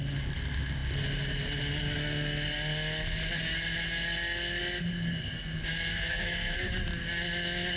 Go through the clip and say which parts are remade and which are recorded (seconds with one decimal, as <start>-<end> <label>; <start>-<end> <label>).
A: 0.0-5.9 recorded; 5.9-6.7 remade; 6.7-7.8 recorded